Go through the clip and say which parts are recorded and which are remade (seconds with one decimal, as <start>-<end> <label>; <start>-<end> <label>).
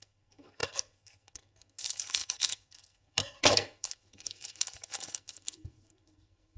0.0-6.6 remade